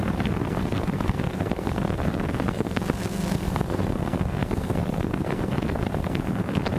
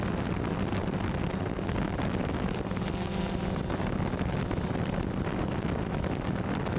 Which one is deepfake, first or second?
first